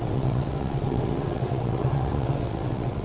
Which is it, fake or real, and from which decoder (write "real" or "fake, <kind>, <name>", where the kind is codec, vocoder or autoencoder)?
fake, vocoder, WaveNeXt